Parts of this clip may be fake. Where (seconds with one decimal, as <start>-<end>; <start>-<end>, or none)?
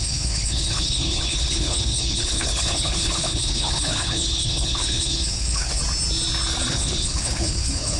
0.0-5.8; 6.7-8.0